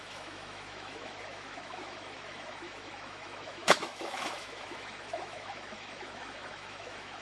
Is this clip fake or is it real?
fake